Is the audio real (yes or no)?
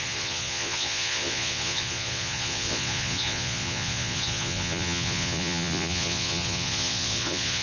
no